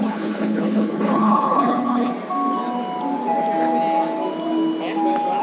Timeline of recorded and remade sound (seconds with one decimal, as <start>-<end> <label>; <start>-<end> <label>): 0.0-2.1 remade; 2.1-5.4 recorded